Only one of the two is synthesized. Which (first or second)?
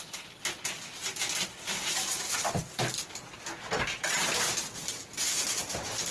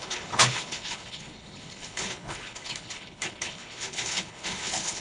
second